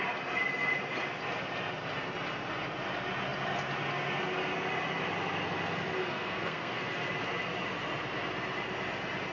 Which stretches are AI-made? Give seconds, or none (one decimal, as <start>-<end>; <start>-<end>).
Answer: 6.0-6.8